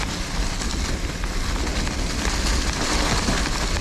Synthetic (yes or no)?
no